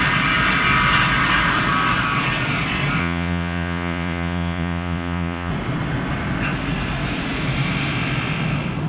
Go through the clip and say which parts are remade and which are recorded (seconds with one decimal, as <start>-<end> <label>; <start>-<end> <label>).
0.0-3.0 recorded; 3.0-5.5 remade; 5.5-8.9 recorded